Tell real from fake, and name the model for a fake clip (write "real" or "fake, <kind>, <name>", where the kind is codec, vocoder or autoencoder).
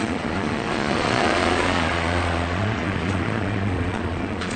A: fake, vocoder, Vocos